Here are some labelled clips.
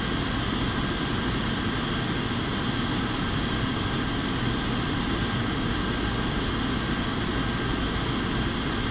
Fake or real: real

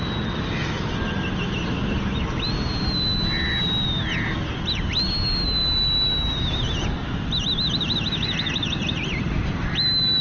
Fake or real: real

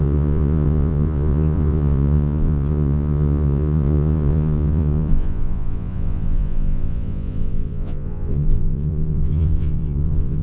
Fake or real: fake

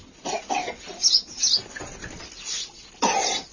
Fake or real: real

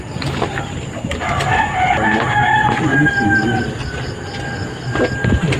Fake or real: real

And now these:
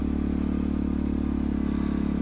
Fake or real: real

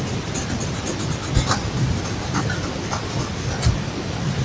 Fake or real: real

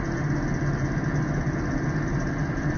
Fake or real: real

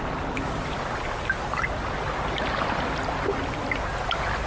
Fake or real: real